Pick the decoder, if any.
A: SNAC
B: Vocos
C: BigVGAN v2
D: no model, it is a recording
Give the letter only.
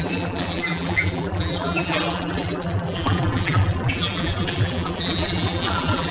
C